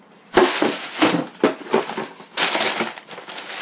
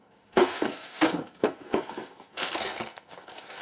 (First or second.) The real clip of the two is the first